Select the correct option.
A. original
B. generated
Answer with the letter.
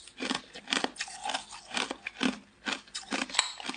A